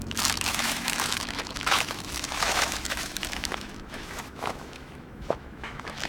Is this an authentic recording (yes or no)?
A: no